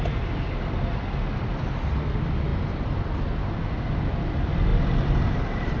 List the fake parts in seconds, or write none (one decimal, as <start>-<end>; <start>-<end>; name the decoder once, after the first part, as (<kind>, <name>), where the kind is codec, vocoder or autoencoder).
none